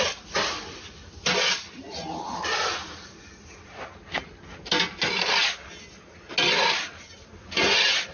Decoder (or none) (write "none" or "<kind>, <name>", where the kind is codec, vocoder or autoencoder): none